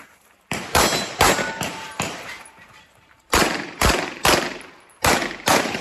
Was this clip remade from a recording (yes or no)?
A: yes